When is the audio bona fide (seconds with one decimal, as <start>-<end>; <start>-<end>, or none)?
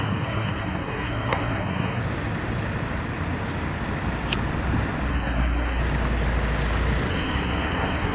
2.0-5.1; 5.8-7.1